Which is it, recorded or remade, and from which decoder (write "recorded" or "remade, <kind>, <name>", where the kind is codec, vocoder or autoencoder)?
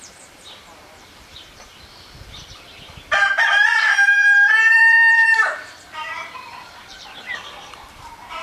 remade, vocoder, BigVGAN v2